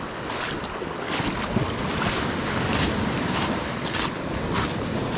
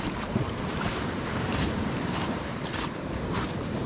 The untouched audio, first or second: first